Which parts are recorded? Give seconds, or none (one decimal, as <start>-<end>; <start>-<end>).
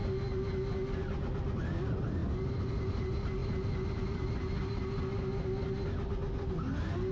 0.0-7.1